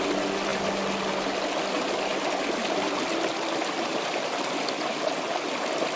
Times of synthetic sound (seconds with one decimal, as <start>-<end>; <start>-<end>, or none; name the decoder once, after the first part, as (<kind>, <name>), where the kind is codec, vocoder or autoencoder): none